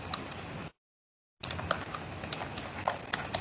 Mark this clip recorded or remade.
recorded